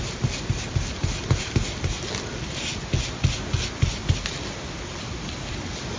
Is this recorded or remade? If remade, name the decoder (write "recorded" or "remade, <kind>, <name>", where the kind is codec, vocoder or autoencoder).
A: recorded